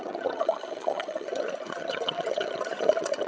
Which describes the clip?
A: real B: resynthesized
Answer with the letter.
B